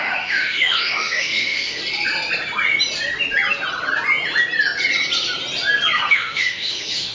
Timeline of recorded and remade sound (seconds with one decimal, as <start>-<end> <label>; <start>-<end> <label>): 0.0-1.8 remade; 1.8-6.1 recorded; 6.1-7.1 remade